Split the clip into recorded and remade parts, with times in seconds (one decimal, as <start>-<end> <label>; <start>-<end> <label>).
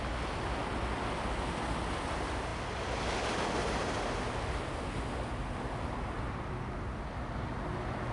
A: 0.0-8.1 recorded